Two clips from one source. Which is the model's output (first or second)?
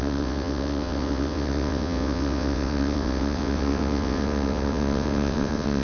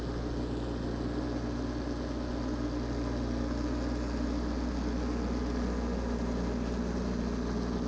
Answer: first